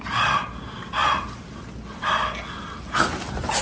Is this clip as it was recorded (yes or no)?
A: yes